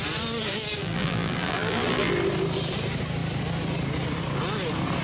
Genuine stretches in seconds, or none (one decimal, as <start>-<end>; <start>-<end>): 0.0-0.8; 2.1-5.0